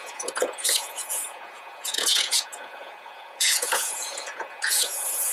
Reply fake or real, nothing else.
fake